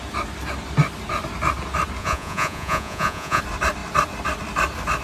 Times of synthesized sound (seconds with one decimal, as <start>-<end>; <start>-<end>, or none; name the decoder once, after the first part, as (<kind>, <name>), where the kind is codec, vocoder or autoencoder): 2.0-3.4 (vocoder, Vocos)